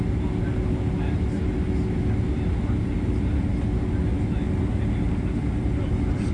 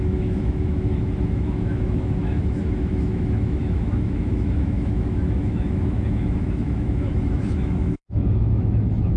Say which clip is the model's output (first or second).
second